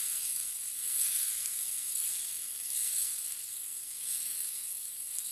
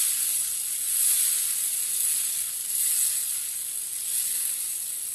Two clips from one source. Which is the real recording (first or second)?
second